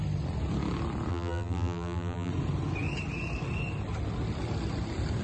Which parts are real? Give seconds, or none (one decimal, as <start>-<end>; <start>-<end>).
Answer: 0.0-1.1; 2.3-5.2